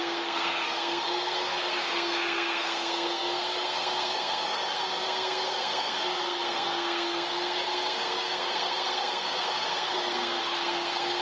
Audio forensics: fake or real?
fake